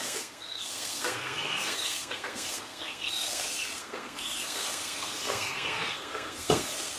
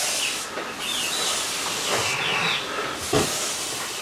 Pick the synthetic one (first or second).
first